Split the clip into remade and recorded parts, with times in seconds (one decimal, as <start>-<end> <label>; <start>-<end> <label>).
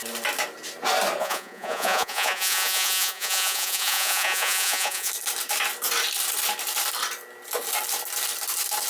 0.0-1.2 recorded; 1.2-5.1 remade; 5.1-8.9 recorded